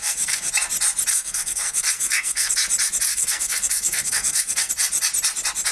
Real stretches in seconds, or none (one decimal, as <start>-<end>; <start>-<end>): 0.5-1.1; 2.5-3.1; 4.7-5.7